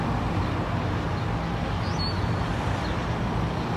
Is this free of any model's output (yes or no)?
yes